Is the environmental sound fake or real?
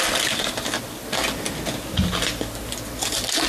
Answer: real